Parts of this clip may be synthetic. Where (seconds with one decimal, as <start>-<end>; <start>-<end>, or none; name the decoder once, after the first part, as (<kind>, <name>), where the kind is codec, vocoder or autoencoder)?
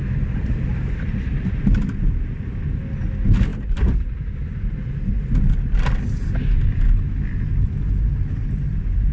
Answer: none